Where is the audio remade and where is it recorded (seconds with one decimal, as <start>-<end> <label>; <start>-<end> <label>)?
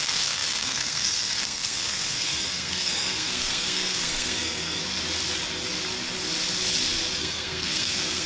0.0-4.8 remade; 4.8-7.2 recorded; 7.2-8.3 remade